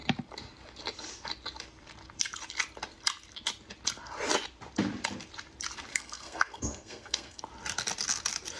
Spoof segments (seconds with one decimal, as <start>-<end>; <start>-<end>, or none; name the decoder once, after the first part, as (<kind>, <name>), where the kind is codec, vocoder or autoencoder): 5.9-7.4 (codec, SNAC)